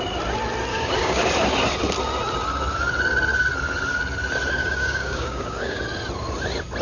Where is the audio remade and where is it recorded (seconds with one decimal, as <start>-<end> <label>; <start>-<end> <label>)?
0.0-0.7 recorded; 0.7-1.3 remade; 1.3-4.6 recorded; 4.6-5.8 remade; 5.8-6.8 recorded